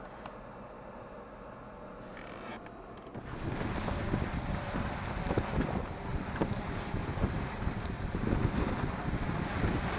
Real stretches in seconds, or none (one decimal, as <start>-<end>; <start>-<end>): 0.0-6.1; 8.3-10.0